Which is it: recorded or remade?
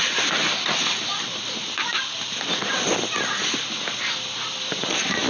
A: recorded